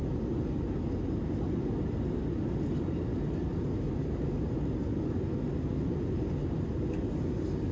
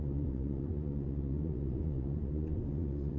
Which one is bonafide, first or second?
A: first